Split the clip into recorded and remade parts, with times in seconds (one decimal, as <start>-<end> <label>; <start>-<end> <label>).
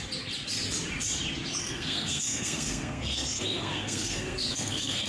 0.0-1.6 recorded; 1.6-5.1 remade